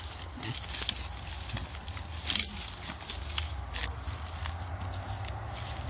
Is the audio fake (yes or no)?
no